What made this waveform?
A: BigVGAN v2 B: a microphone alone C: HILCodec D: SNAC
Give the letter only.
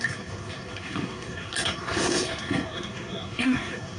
D